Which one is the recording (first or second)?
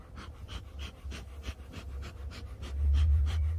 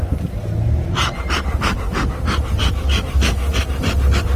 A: second